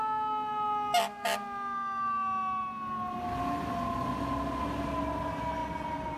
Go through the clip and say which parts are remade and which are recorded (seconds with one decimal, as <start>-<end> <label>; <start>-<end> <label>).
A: 0.0-6.2 recorded